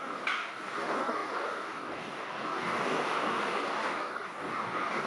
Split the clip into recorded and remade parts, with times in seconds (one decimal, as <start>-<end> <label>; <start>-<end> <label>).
0.0-5.1 remade

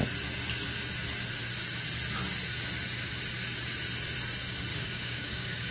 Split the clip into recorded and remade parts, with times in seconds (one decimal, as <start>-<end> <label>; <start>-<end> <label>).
0.0-4.7 recorded; 4.7-5.7 remade